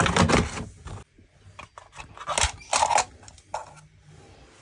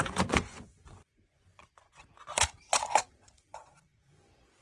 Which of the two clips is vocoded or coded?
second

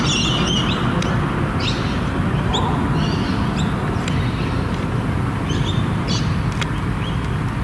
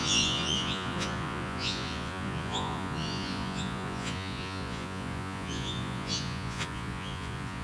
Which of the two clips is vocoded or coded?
second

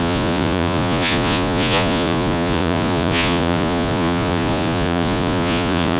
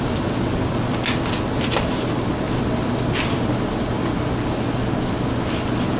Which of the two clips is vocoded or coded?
first